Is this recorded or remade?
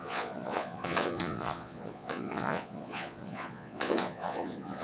remade